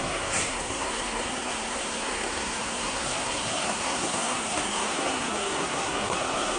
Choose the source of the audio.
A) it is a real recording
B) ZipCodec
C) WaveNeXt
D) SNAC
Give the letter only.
D